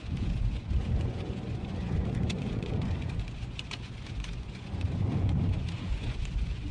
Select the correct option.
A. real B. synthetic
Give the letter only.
B